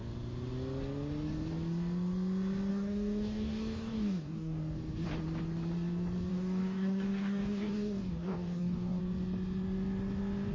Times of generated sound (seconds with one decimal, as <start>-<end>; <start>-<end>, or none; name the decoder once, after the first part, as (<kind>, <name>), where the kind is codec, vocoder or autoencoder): 2.7-4.6 (codec, DAC); 6.3-9.0